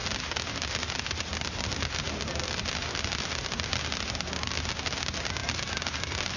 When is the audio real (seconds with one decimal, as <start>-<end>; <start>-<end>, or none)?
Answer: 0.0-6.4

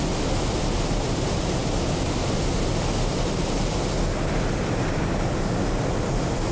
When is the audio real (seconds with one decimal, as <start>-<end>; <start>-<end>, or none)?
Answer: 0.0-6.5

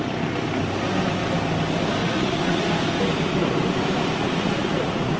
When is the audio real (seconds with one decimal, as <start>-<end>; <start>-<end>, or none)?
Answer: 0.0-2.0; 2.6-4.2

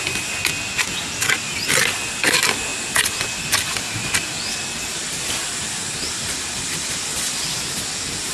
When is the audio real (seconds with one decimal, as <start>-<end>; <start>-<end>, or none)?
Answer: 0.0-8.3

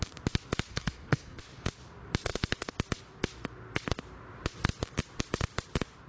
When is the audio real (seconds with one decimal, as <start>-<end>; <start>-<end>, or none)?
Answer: 0.0-0.7; 1.4-6.1

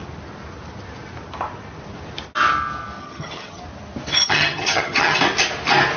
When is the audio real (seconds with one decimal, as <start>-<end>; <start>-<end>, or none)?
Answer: 0.0-3.0; 3.6-4.1; 5.2-6.0